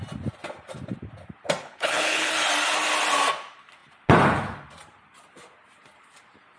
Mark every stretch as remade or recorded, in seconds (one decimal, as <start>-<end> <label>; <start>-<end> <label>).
0.0-1.6 recorded; 1.6-2.3 remade; 2.3-6.6 recorded

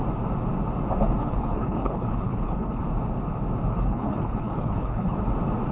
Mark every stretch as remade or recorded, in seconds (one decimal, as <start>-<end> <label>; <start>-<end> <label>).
0.0-1.2 recorded; 1.2-2.8 remade; 2.8-3.7 recorded; 3.7-5.2 remade; 5.2-5.7 recorded